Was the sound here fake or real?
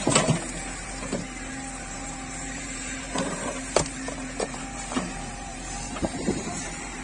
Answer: fake